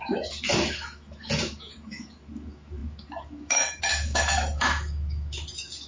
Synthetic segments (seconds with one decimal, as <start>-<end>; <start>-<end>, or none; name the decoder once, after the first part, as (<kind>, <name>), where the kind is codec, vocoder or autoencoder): 0.0-5.9 (autoencoder, DAC-VAE)